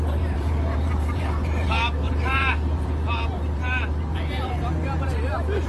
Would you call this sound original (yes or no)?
no